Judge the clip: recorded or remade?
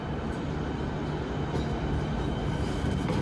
recorded